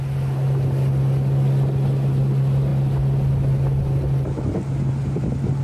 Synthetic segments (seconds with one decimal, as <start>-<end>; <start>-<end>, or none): none